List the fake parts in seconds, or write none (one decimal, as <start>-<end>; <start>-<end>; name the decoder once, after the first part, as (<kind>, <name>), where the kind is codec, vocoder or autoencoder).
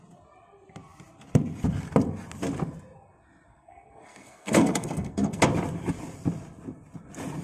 3.5-5.4 (codec, SNAC)